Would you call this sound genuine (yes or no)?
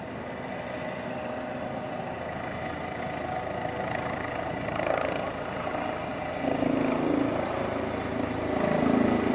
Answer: yes